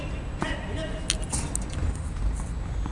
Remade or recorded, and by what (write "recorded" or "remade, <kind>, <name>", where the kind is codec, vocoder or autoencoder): recorded